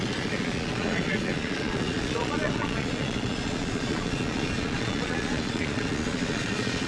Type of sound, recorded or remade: remade